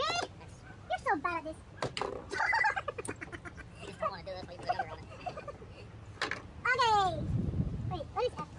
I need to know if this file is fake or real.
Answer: real